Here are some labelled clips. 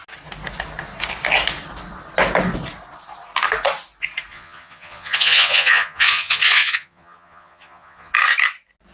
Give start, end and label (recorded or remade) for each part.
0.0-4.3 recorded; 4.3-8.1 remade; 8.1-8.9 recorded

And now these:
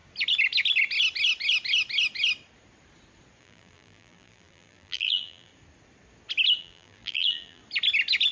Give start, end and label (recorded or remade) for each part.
0.0-3.4 recorded; 3.4-5.5 remade; 5.5-6.6 recorded; 6.6-7.6 remade; 7.6-8.3 recorded

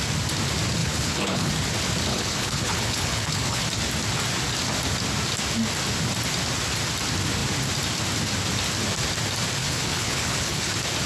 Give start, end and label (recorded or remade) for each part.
0.0-0.8 recorded; 0.8-1.5 remade; 1.5-2.1 recorded; 2.1-3.6 remade; 3.6-9.6 recorded; 9.6-10.7 remade; 10.7-11.1 recorded

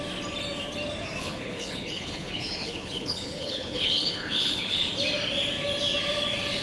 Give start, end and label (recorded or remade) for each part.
0.0-1.2 recorded; 1.2-4.9 remade; 4.9-6.6 recorded

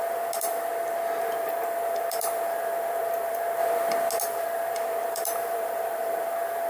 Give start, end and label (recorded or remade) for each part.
0.0-0.7 remade; 0.7-1.2 recorded; 1.2-3.6 remade; 3.6-4.2 recorded; 4.2-6.7 remade

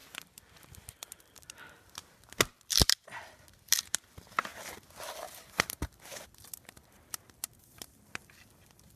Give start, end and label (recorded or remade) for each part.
0.0-2.0 remade; 2.0-2.5 recorded; 2.5-9.0 remade

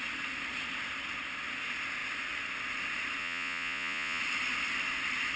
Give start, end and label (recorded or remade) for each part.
0.0-3.2 recorded; 3.2-4.2 remade; 4.2-5.4 recorded